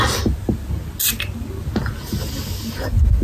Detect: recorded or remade recorded